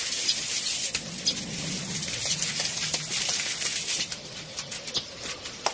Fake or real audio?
real